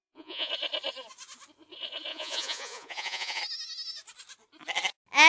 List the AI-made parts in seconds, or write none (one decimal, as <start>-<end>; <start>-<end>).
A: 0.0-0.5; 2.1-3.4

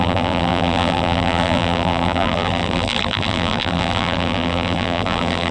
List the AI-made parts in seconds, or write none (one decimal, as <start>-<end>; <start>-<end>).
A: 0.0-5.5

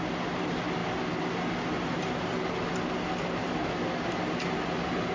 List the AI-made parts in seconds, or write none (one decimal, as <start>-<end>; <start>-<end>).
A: none

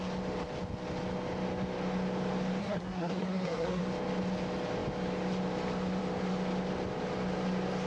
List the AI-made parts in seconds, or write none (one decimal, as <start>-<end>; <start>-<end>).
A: 2.6-3.8